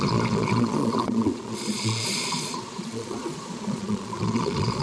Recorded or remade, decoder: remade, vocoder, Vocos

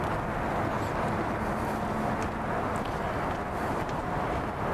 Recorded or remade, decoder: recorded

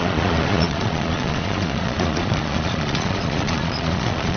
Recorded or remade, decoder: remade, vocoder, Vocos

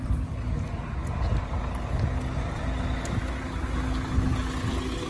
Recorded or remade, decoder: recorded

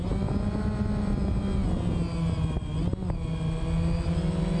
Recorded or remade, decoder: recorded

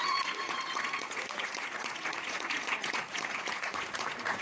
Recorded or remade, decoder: remade, vocoder, Vocos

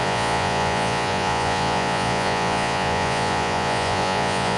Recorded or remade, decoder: remade, vocoder, Vocos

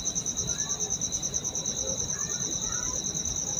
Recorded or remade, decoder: recorded